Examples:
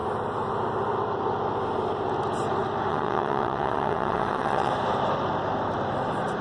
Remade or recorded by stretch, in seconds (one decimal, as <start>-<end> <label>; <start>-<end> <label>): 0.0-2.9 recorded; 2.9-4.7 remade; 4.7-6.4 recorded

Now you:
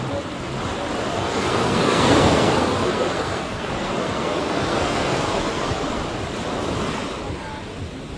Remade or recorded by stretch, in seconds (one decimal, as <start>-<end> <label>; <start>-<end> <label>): 0.0-1.1 recorded; 1.1-6.0 remade; 6.0-8.2 recorded

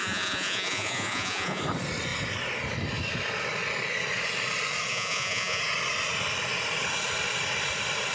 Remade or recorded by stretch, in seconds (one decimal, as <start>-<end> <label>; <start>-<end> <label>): 0.0-1.6 remade; 1.6-4.9 recorded; 4.9-5.6 remade; 5.6-8.1 recorded